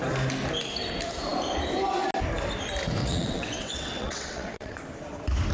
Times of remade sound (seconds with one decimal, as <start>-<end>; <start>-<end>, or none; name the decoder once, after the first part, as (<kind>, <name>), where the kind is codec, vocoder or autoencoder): 3.0-4.8 (vocoder, WaveNeXt)

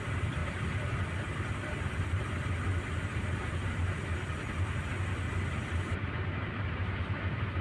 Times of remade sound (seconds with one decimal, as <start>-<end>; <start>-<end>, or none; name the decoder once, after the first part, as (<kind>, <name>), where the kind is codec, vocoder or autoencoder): 0.4-1.8 (vocoder, BigVGAN v2)

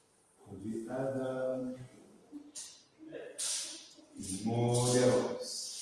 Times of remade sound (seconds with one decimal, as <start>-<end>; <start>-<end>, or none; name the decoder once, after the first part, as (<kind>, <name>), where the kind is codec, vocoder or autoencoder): 1.5-4.0 (vocoder, BigVGAN v2)

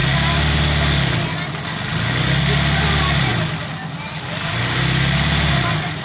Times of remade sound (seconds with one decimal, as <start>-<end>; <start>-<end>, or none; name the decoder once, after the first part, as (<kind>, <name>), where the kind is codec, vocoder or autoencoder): 2.1-3.3 (vocoder, BigVGAN v2); 3.9-6.0

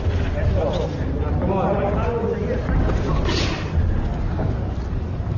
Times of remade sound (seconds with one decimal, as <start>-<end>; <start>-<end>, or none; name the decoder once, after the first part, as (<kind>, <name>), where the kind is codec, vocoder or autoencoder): none

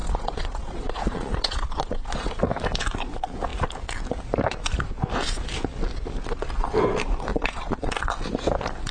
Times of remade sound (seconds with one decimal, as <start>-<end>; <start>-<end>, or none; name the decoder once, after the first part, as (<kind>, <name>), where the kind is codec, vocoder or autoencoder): 0.0-2.4 (vocoder, Vocos); 7.3-7.9

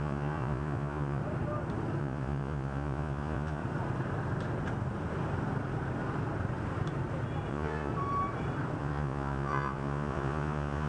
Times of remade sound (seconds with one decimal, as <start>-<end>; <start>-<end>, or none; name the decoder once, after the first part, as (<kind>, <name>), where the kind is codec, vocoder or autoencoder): 0.0-1.2 (vocoder, Vocos); 2.0-3.6; 7.5-7.9; 8.8-10.9

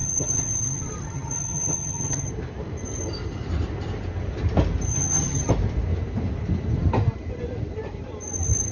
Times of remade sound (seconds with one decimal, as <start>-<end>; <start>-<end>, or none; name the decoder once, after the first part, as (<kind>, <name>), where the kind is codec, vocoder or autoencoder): 0.0-2.3 (vocoder, HiFi-GAN); 4.9-5.5